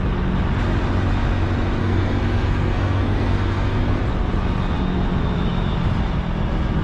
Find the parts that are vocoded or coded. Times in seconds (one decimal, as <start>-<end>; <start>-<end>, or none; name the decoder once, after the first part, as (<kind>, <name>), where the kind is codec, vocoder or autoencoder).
1.8-4.0 (codec, SNAC)